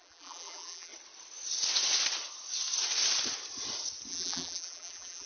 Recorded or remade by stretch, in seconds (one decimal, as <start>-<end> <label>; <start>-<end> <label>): 0.0-0.9 remade; 0.9-4.1 recorded; 4.1-5.3 remade